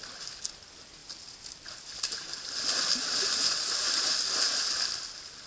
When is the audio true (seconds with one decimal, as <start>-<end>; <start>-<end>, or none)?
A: 0.0-5.5